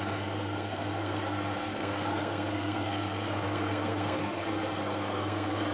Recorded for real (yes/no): no